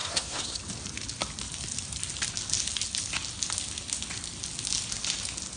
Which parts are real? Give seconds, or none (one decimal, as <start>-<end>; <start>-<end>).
0.6-5.6